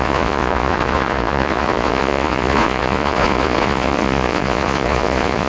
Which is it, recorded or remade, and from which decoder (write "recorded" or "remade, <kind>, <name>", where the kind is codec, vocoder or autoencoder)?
remade, vocoder, Vocos